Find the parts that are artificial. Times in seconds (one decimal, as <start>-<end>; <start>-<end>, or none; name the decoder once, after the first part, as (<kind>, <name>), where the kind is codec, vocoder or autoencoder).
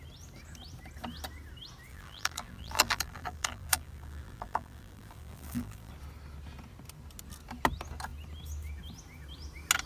1.9-5.9 (vocoder, BigVGAN v2)